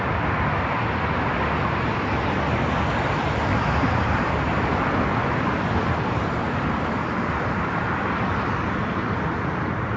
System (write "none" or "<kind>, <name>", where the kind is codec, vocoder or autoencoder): none